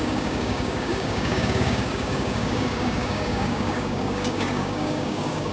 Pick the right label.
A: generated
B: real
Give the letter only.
A